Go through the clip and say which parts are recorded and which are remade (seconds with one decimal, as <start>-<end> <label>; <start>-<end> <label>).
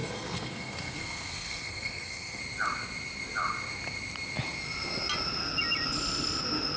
0.0-2.4 remade; 2.4-6.8 recorded